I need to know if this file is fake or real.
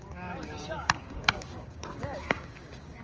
fake